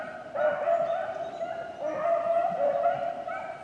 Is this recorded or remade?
recorded